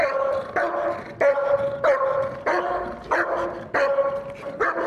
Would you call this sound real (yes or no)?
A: yes